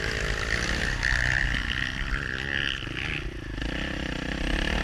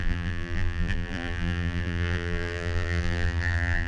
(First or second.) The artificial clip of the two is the second